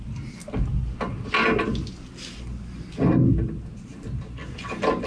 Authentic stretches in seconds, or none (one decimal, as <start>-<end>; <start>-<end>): 0.0-5.1

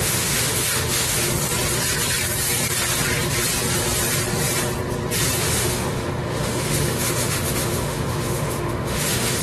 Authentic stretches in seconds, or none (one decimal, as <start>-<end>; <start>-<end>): 1.3-5.4

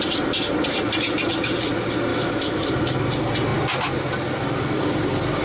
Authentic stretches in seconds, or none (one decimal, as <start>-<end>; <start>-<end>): 0.0-2.1; 2.6-5.4

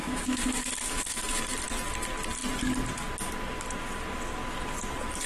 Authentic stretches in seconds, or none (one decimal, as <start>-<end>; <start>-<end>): 1.4-5.3

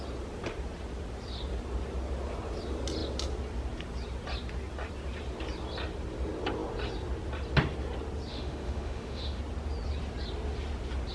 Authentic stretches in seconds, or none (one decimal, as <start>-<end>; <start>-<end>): 0.0-8.3; 9.4-11.1